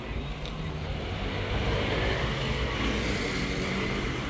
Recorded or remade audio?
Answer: recorded